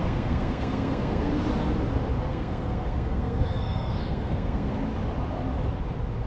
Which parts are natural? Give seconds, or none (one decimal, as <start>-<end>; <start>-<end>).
1.4-2.3; 4.7-6.3